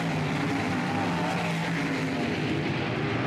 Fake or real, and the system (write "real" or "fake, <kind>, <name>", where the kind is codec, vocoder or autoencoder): real